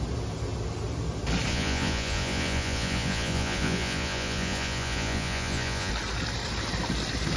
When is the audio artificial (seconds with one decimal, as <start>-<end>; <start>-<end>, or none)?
1.5-5.9